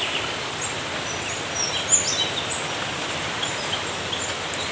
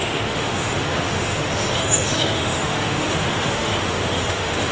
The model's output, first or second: second